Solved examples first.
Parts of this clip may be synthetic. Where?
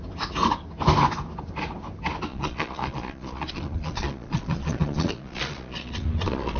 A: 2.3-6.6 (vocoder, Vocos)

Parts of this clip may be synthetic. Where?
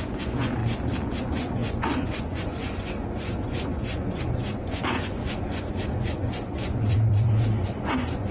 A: 0.0-0.6 (vocoder, Vocos); 1.2-8.3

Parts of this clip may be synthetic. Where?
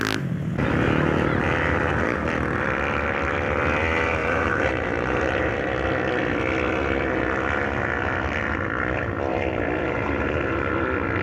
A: 4.2-5.5 (vocoder, BigVGAN v2); 9.3-10.7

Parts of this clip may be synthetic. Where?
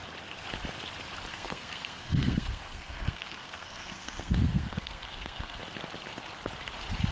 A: 1.3-5.6 (codec, SNAC)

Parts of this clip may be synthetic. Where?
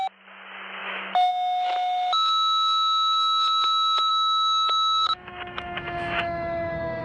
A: 0.8-1.3 (autoencoder, DAC-VAE); 4.1-7.0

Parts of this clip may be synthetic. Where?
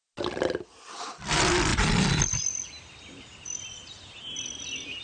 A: none